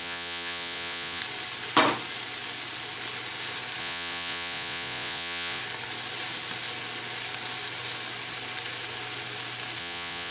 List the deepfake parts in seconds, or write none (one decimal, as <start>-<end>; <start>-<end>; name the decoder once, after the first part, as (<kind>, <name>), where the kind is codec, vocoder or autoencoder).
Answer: 0.0-1.2 (vocoder, Vocos); 3.8-5.6; 9.8-10.3